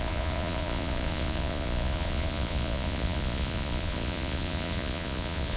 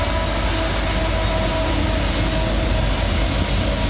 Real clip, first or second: second